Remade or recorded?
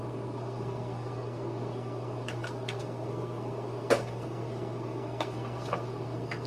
remade